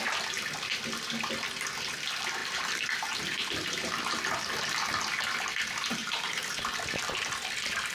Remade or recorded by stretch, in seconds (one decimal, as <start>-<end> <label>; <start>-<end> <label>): 0.0-2.4 recorded; 2.4-4.9 remade; 4.9-6.0 recorded; 6.0-6.8 remade; 6.8-7.9 recorded